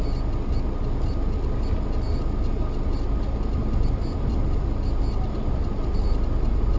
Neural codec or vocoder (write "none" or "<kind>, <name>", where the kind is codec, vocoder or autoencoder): none